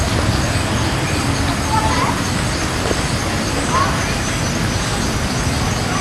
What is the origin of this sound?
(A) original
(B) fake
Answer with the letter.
A